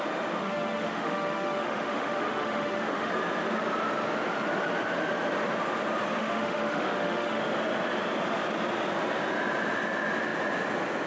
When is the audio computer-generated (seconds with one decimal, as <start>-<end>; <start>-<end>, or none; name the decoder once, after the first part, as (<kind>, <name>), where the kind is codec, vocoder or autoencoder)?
0.4-3.1 (autoencoder, DAC-VAE); 6.2-7.4